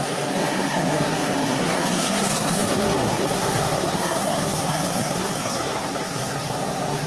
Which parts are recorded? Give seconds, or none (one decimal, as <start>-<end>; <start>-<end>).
none